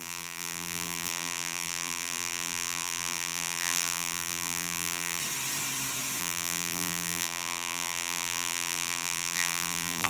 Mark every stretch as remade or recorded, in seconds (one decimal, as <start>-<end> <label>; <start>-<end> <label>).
0.0-5.2 remade; 5.2-6.2 recorded; 6.2-10.1 remade